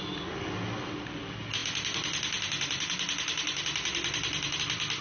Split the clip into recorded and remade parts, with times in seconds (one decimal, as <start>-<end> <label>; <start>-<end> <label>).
0.0-5.0 recorded